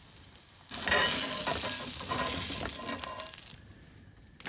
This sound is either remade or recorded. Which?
recorded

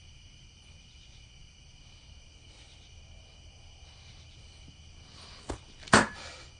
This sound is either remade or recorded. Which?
recorded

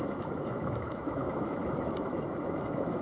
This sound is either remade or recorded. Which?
remade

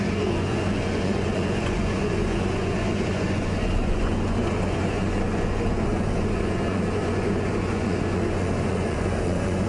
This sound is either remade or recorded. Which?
remade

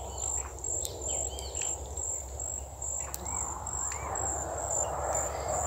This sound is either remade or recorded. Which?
recorded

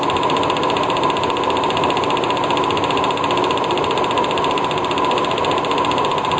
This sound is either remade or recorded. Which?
recorded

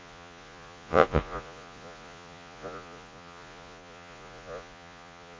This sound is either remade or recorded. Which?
remade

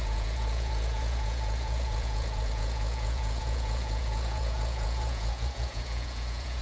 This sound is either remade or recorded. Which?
remade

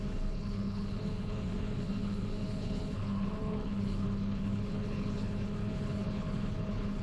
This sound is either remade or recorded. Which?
remade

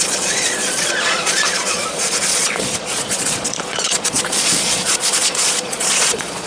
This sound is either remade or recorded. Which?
remade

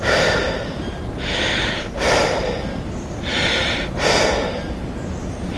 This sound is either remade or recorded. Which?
recorded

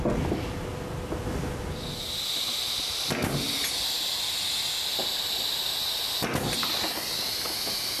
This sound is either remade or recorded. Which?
recorded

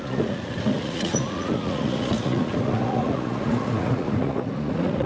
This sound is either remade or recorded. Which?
remade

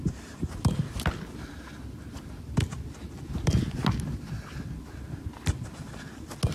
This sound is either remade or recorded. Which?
recorded